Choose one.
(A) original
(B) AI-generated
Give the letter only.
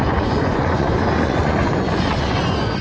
B